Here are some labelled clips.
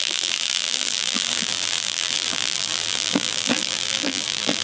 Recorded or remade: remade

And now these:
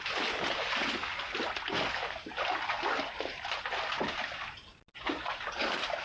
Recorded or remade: recorded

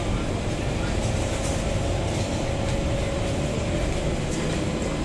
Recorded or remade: recorded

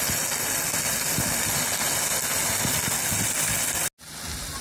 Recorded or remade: recorded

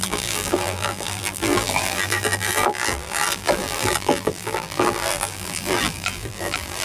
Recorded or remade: remade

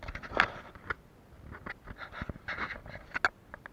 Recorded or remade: recorded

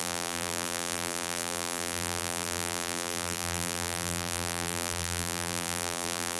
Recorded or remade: remade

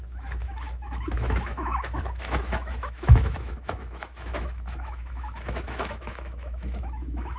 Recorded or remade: remade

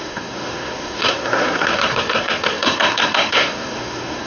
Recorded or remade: remade